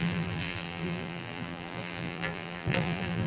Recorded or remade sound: remade